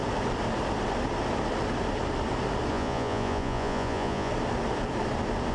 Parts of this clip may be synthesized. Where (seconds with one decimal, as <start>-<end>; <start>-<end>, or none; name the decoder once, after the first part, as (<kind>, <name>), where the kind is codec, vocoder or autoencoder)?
2.7-4.3 (vocoder, Vocos)